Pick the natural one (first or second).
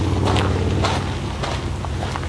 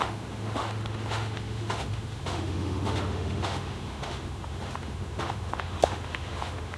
first